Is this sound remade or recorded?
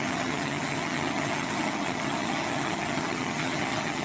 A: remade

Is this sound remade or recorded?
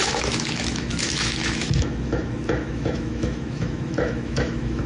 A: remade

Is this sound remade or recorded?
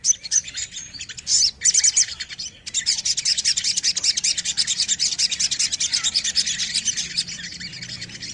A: recorded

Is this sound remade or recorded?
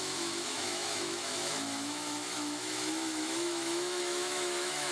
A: remade